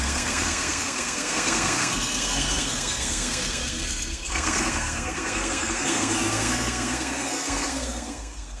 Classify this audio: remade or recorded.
remade